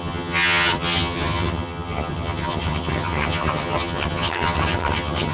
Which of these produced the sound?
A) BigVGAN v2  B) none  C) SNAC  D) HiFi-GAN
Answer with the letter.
D